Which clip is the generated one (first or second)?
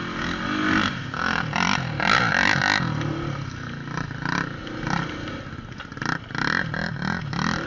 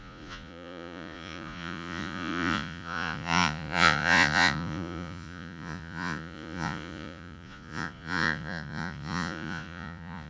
second